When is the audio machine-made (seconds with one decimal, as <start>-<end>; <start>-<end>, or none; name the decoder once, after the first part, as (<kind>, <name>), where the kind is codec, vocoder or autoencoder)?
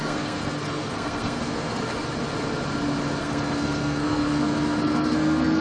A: 0.0-1.8 (codec, SNAC); 3.2-5.6